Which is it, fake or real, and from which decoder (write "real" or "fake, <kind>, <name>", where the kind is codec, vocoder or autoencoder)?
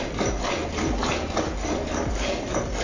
real